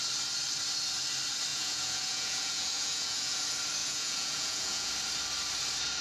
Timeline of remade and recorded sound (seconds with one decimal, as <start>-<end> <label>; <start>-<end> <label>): 0.0-1.5 recorded; 1.5-3.4 remade; 3.4-3.8 recorded; 3.8-4.9 remade; 4.9-6.0 recorded